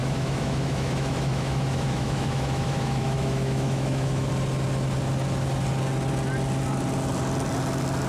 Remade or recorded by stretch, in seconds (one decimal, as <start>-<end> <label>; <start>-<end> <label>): 0.0-4.3 remade; 4.3-8.1 recorded